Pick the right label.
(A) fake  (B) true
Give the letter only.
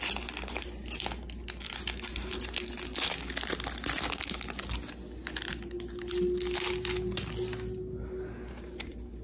B